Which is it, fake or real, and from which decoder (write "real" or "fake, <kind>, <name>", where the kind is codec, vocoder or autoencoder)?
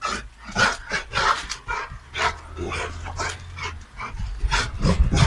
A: real